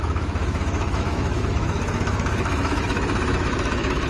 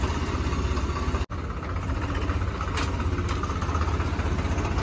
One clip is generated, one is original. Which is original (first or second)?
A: second